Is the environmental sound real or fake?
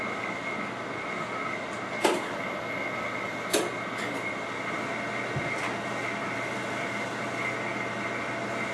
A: real